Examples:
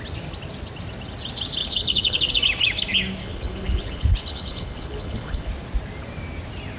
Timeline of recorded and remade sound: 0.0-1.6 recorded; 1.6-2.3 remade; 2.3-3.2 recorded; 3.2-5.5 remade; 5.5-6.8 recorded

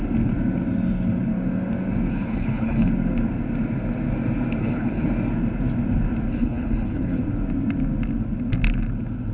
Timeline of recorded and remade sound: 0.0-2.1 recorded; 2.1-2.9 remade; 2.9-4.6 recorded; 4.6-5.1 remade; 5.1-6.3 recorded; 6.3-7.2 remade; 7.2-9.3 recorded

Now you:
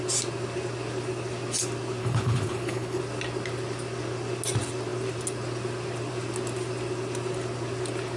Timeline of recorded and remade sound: 0.0-2.0 recorded; 2.0-3.0 remade; 3.0-8.2 recorded

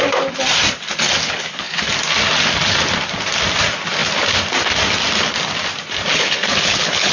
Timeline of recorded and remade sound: 0.0-1.2 recorded; 1.2-1.8 remade; 1.8-6.1 recorded; 6.1-7.1 remade

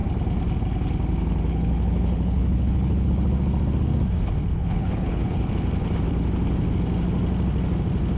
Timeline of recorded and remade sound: 0.0-1.5 recorded; 1.5-3.1 remade; 3.1-4.5 recorded; 4.5-5.5 remade; 5.5-8.2 recorded

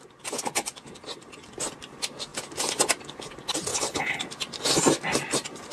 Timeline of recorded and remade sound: 0.0-3.7 recorded; 3.7-4.2 remade; 4.2-5.7 recorded

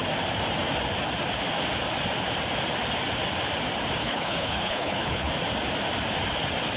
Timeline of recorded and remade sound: 0.0-4.0 recorded; 4.0-5.3 remade; 5.3-6.8 recorded

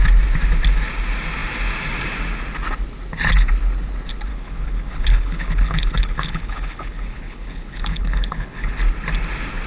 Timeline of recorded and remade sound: 0.0-4.3 recorded; 4.3-8.7 remade; 8.7-9.7 recorded